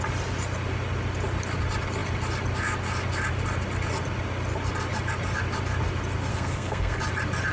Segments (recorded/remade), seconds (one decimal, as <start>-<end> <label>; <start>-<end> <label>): 0.0-6.3 recorded; 6.3-7.0 remade; 7.0-7.5 recorded